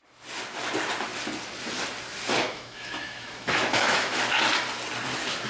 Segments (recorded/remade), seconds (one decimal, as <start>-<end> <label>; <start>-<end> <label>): 0.0-2.3 recorded; 2.3-4.2 remade; 4.2-5.5 recorded